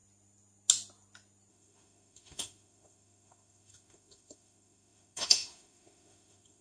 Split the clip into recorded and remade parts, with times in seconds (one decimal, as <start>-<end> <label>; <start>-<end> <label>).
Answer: 0.0-1.5 recorded; 1.5-6.6 remade